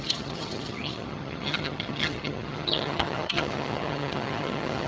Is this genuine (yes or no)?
no